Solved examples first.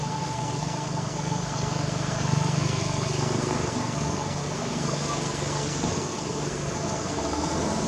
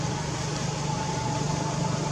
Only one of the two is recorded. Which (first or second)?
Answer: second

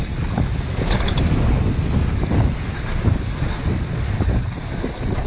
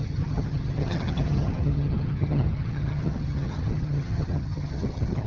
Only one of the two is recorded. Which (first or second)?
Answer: first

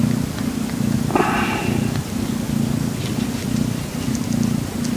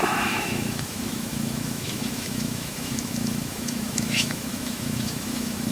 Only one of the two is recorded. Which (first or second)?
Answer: first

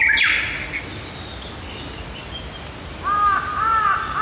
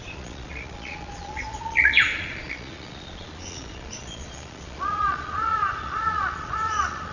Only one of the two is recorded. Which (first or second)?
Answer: first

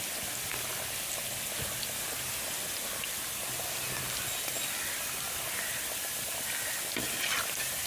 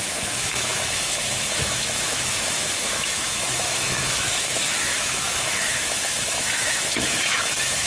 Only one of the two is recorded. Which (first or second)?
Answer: first